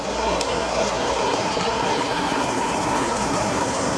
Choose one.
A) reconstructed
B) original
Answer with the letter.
A